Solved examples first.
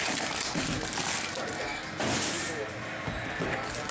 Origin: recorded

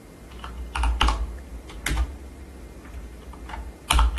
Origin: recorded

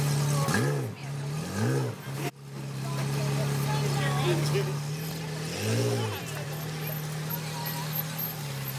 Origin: recorded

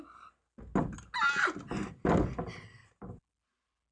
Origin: recorded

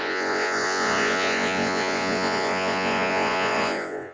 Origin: remade